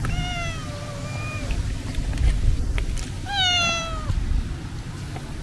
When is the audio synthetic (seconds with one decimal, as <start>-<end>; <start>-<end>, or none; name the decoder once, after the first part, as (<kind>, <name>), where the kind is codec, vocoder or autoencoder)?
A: none